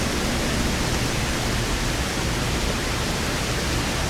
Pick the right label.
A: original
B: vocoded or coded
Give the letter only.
A